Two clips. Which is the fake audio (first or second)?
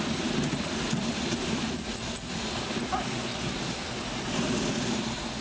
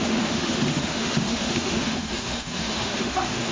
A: second